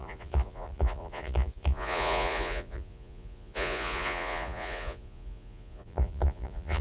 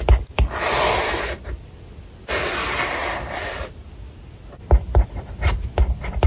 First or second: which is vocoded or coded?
first